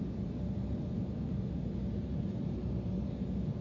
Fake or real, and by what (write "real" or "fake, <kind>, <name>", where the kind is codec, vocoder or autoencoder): real